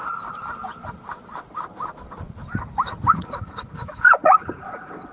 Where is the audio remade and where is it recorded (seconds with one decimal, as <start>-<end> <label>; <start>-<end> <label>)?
0.0-3.1 recorded; 3.1-5.1 remade